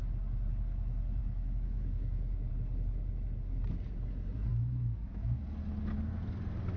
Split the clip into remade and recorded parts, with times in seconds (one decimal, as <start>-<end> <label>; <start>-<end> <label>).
0.0-1.2 recorded; 1.2-2.5 remade; 2.5-4.5 recorded; 4.5-5.4 remade; 5.4-6.8 recorded